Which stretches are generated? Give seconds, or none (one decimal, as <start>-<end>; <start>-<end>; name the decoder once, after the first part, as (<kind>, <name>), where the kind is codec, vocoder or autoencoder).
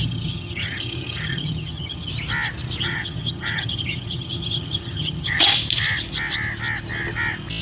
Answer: 0.0-2.1 (vocoder, HiFi-GAN); 2.8-5.5